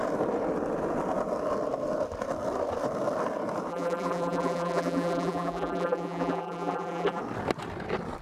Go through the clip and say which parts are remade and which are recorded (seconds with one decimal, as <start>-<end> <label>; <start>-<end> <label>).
0.0-3.7 recorded; 3.7-7.2 remade; 7.2-8.2 recorded